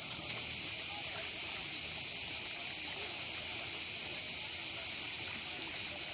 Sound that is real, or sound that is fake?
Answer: real